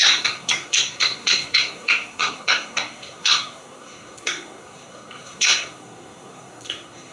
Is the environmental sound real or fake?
fake